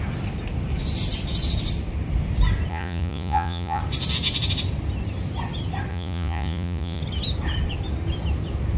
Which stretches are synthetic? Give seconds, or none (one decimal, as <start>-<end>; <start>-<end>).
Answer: 2.7-3.8; 5.9-7.0